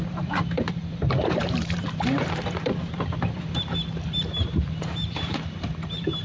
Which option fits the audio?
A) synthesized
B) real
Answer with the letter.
A